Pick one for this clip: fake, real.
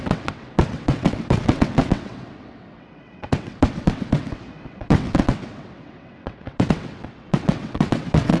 fake